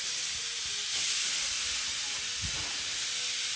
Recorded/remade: recorded